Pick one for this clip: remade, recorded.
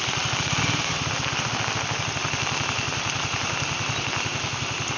recorded